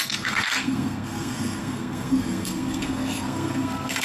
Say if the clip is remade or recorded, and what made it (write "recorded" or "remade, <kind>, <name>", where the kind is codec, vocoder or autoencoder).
remade, codec, SNAC